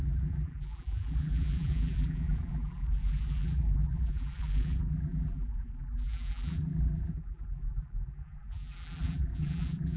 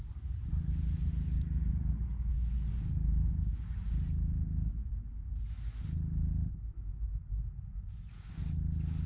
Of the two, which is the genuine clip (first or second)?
second